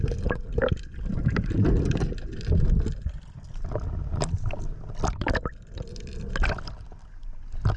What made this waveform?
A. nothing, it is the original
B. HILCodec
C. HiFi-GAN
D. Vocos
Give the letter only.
A